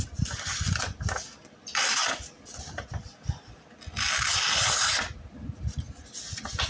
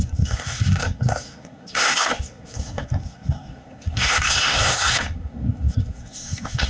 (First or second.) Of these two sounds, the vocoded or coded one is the second